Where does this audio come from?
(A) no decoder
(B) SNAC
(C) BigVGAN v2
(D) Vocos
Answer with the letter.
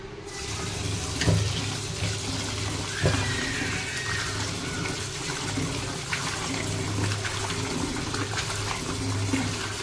A